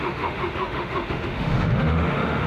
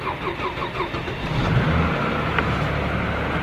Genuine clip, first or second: second